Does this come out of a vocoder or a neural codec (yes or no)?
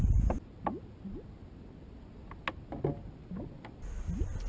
no